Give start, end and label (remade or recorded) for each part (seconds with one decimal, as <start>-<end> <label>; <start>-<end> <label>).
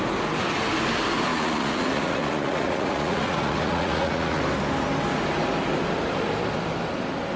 0.0-1.3 recorded; 1.3-4.4 remade; 4.4-7.4 recorded